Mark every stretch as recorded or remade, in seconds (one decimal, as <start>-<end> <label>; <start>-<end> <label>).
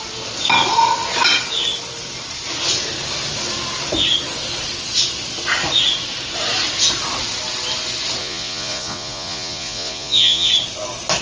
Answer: 0.0-8.2 recorded; 8.2-10.5 remade; 10.5-11.2 recorded